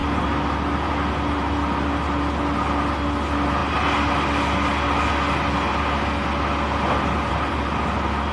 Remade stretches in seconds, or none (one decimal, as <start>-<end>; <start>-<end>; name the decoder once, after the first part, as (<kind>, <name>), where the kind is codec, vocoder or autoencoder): none